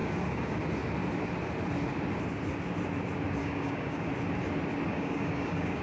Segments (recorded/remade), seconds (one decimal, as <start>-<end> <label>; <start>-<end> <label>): 0.0-0.6 remade; 0.6-3.4 recorded; 3.4-4.1 remade; 4.1-4.9 recorded; 4.9-5.8 remade